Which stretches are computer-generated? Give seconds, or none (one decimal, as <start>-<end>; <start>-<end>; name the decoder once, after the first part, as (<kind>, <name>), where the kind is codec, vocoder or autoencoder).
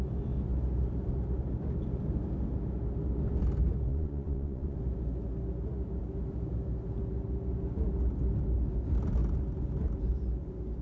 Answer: 3.9-4.8 (vocoder, Vocos)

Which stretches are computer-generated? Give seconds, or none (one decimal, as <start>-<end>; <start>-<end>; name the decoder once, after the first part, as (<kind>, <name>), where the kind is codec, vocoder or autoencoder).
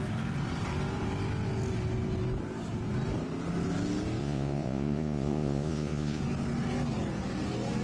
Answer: 4.2-6.2 (vocoder, Vocos)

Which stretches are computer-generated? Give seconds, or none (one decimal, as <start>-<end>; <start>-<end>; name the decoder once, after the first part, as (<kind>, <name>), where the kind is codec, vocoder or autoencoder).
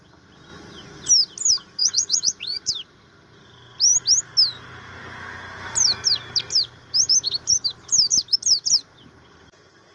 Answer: 0.5-1.1 (vocoder, Vocos); 1.8-2.6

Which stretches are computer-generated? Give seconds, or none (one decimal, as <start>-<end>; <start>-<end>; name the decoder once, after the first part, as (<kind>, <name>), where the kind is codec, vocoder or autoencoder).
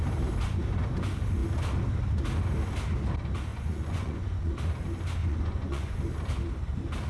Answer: 3.5-4.6 (vocoder, Vocos); 5.2-6.0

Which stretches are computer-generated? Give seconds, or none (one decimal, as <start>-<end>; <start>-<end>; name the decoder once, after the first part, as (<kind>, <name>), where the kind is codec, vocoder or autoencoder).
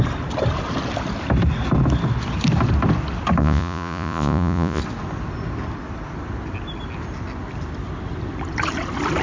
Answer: 3.4-4.8 (vocoder, Vocos)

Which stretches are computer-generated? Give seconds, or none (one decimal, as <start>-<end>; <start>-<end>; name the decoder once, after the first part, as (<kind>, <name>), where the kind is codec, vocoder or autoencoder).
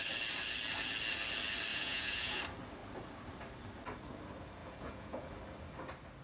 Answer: 1.7-2.4 (vocoder, Vocos); 4.6-5.3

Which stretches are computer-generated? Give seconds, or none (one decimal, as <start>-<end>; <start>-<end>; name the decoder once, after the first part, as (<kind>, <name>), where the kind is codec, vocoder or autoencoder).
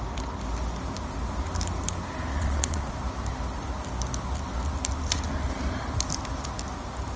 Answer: 2.3-2.9 (vocoder, Vocos)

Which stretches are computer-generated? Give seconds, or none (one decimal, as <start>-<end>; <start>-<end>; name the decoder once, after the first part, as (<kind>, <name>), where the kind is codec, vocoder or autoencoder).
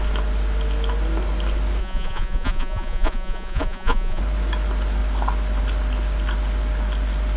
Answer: 1.8-4.2 (vocoder, Vocos)